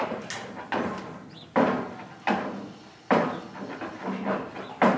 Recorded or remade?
recorded